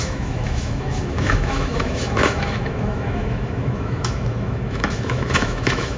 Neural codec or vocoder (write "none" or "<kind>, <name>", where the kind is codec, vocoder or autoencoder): autoencoder, DAC-VAE